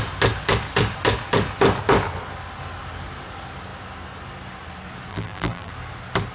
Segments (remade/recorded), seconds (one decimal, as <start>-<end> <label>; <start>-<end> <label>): 0.0-5.1 recorded; 5.1-5.7 remade; 5.7-6.3 recorded